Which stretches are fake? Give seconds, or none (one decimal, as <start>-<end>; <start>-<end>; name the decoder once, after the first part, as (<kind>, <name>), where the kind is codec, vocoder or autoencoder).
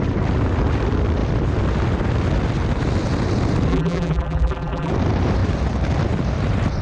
3.7-4.9 (vocoder, BigVGAN v2)